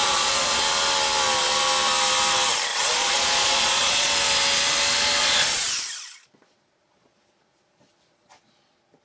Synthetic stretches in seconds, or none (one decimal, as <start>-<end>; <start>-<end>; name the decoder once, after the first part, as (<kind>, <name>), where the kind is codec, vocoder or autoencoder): 0.0-0.6 (vocoder, Vocos); 2.7-4.1; 5.2-8.3